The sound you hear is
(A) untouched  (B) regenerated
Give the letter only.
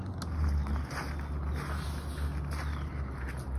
A